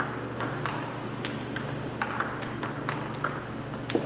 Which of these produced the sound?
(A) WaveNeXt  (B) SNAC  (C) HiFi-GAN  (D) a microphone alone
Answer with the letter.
D